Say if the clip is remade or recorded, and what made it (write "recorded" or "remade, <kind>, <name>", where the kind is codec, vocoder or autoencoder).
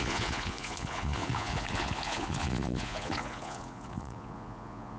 remade, vocoder, Vocos